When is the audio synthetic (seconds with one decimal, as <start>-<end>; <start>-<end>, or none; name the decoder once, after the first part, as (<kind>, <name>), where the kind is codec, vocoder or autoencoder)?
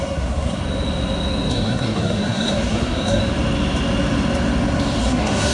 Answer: 0.0-0.6 (codec, SNAC); 1.5-3.2; 5.0-5.5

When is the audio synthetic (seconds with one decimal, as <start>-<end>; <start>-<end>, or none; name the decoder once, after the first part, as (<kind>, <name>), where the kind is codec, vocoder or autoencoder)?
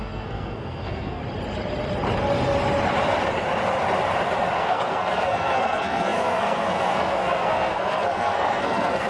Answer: 0.0-1.2 (codec, SNAC); 4.6-9.1